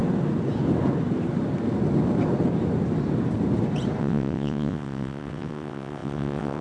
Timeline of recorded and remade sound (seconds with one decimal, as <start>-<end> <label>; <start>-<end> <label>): 0.0-4.0 recorded; 4.0-6.6 remade